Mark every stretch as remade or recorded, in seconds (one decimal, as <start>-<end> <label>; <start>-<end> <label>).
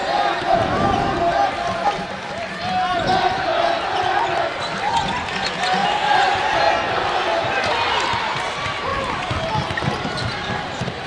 0.0-0.7 remade; 0.7-5.8 recorded; 5.8-6.6 remade; 6.6-11.1 recorded